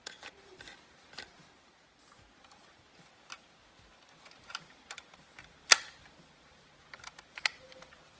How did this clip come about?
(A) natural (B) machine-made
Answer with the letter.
A